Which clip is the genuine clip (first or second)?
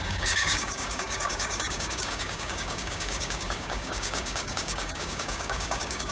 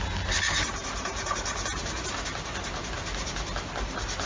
second